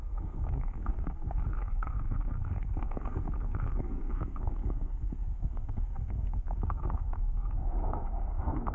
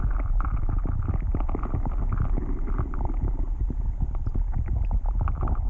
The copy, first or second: first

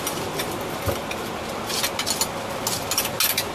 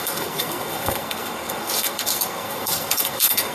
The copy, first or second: second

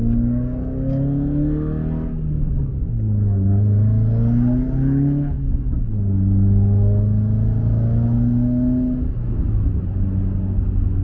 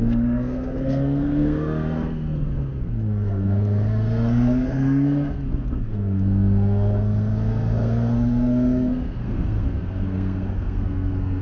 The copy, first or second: second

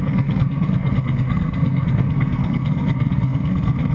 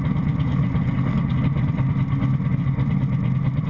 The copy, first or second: first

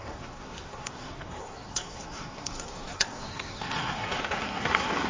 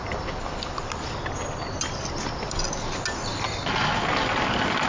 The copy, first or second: first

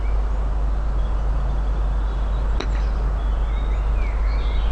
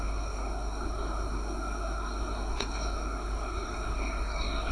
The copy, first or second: second